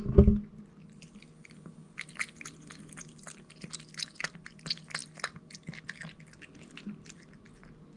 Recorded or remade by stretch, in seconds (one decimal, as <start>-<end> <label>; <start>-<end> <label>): 0.0-8.0 recorded